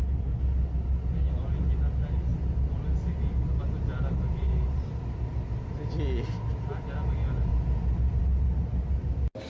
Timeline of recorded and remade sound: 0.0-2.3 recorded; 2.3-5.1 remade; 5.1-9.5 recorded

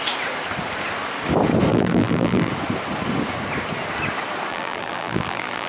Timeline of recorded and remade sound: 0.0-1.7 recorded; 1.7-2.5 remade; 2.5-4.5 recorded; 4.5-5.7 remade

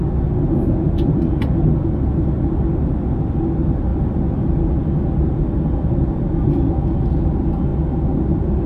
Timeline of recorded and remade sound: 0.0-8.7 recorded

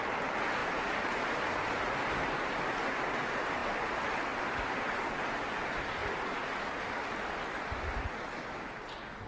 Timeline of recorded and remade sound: 0.0-0.6 recorded; 0.6-2.5 remade; 2.5-9.3 recorded